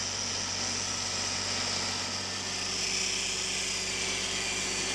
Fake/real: real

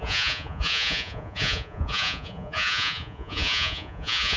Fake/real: fake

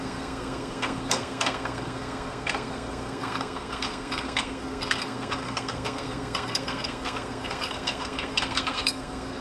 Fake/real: fake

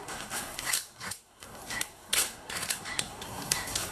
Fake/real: fake